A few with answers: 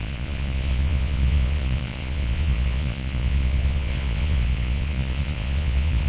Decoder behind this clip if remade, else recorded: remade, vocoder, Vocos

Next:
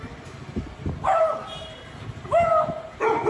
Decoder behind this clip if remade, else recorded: recorded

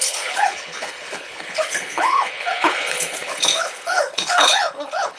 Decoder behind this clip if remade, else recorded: remade, codec, HILCodec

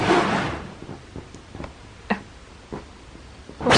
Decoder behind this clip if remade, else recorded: recorded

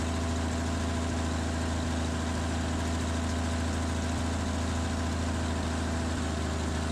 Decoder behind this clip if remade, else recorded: recorded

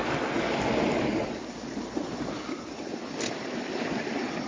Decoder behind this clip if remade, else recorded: recorded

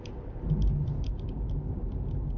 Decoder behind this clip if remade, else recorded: recorded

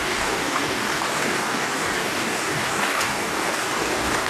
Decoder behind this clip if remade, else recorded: remade, codec, DAC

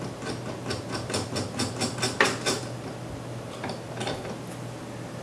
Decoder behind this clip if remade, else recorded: recorded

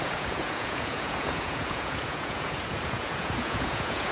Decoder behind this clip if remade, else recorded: remade, vocoder, Vocos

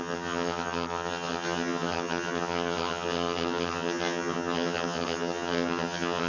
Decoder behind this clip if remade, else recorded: remade, vocoder, HiFi-GAN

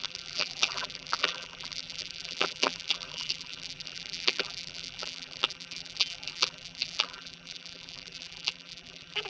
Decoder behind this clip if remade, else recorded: remade, vocoder, BigVGAN v2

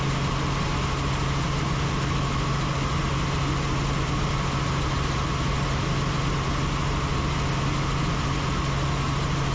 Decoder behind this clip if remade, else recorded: recorded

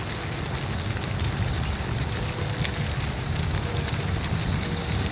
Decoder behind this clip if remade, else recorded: recorded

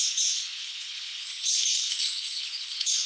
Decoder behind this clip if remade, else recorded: remade, codec, HILCodec